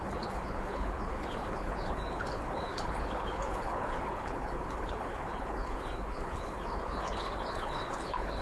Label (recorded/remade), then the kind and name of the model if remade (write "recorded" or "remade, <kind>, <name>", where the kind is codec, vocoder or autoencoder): remade, codec, HILCodec